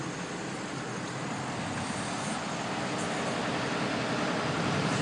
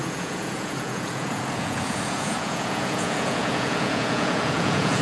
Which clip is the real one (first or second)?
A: first